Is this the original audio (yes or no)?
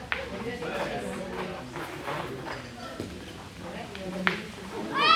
yes